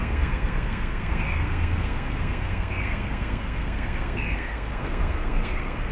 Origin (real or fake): fake